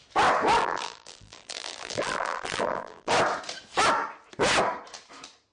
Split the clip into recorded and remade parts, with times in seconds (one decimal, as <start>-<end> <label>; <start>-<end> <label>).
0.0-0.6 recorded; 0.6-3.1 remade; 3.1-5.5 recorded